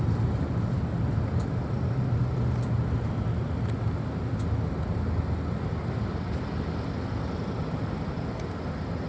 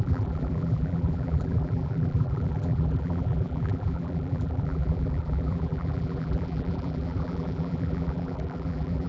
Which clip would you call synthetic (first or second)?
second